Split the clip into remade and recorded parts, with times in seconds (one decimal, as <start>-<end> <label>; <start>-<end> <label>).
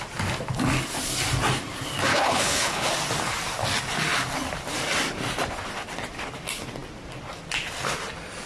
0.0-2.1 recorded; 2.1-2.9 remade; 2.9-8.5 recorded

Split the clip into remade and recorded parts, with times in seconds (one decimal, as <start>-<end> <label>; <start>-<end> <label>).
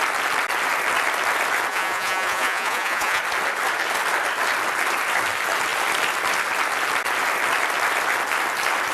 0.0-1.7 recorded; 1.7-3.2 remade; 3.2-8.9 recorded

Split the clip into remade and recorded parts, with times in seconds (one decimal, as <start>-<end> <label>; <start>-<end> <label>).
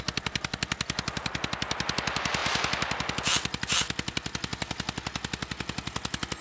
0.0-6.4 recorded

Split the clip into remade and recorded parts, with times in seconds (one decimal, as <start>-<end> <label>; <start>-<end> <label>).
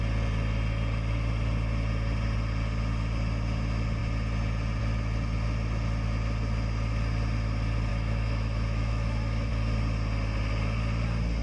0.0-7.9 recorded; 7.9-9.5 remade; 9.5-11.4 recorded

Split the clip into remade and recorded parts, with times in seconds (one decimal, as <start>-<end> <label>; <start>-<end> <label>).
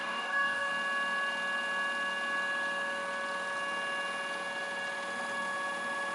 0.0-0.7 remade; 0.7-6.1 recorded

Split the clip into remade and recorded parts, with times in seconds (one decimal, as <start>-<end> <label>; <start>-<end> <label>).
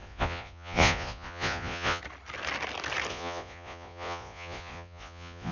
0.0-2.0 remade; 2.0-3.1 recorded; 3.1-5.5 remade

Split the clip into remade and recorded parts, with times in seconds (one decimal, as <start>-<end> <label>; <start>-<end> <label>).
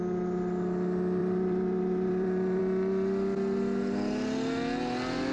0.0-1.2 recorded; 1.2-2.6 remade; 2.6-5.3 recorded